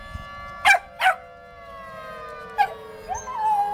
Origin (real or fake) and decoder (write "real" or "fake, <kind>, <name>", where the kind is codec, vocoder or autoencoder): real